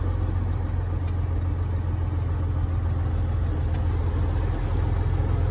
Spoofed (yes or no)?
no